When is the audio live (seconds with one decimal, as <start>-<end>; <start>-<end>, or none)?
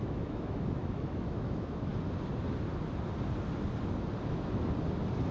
1.9-5.3